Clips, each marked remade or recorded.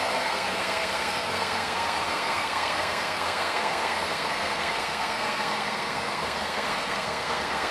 remade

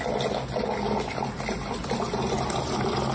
recorded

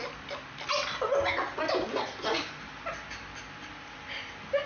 recorded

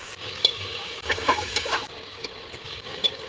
remade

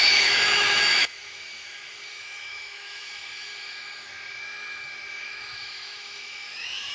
remade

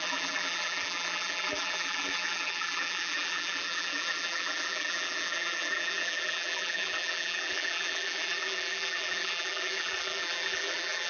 remade